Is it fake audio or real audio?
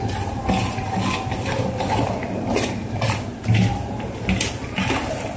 real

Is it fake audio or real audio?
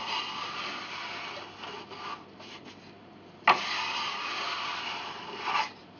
real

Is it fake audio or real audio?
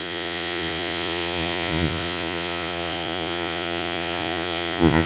fake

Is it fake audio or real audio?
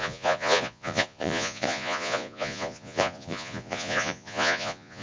fake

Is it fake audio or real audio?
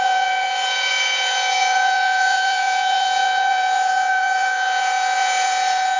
fake